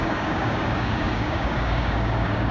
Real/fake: fake